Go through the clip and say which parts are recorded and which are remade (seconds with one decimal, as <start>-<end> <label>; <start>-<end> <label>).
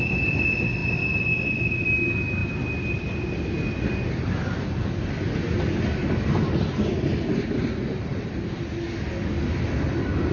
0.0-10.3 recorded